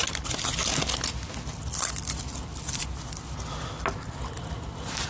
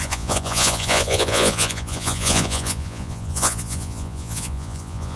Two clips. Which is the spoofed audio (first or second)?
second